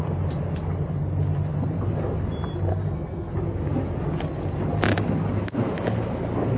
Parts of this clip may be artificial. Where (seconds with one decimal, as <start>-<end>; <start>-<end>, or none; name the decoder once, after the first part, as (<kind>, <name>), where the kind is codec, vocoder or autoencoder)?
2.7-3.3 (codec, SNAC)